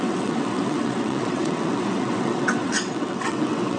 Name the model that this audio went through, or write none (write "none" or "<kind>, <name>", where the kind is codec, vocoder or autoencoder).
vocoder, WaveNeXt